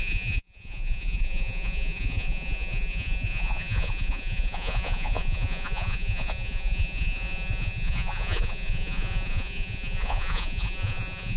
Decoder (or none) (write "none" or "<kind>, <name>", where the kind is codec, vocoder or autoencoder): vocoder, Vocos